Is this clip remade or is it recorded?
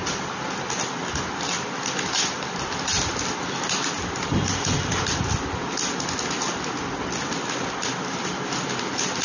recorded